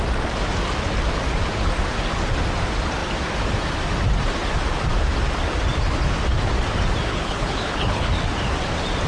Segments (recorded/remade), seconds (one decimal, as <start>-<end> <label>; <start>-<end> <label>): 0.0-7.1 recorded; 7.1-8.1 remade; 8.1-9.1 recorded